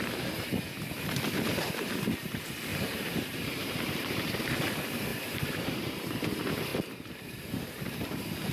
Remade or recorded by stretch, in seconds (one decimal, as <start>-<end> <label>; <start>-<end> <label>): 0.0-2.7 recorded; 2.7-4.4 remade; 4.4-5.1 recorded; 5.1-5.9 remade; 5.9-8.5 recorded